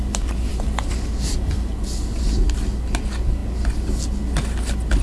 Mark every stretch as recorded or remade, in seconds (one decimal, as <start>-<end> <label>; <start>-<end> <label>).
0.0-5.0 recorded